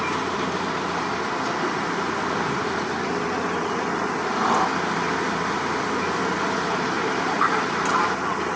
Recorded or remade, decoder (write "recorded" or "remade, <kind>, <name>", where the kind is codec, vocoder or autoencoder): remade, vocoder, BigVGAN v2